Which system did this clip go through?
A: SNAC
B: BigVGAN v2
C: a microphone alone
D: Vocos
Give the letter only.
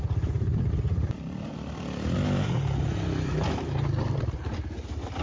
B